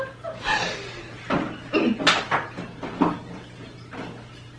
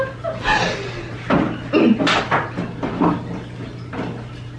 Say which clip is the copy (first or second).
first